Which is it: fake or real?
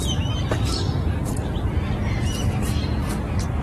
real